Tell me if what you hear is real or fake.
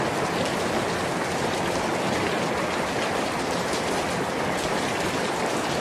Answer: real